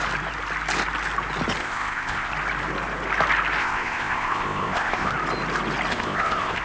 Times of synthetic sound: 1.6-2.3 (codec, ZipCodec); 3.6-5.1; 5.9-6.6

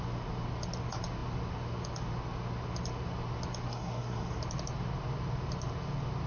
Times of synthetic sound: 3.7-4.4 (codec, SNAC)

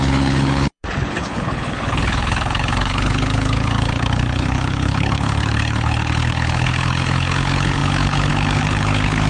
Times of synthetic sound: 0.0-9.3 (codec, HILCodec)

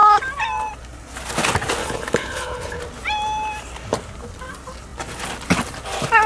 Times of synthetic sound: 1.8-2.8 (codec, HILCodec)